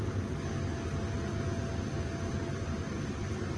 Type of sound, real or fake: real